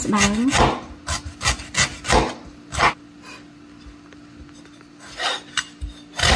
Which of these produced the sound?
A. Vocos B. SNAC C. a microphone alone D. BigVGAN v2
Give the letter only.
C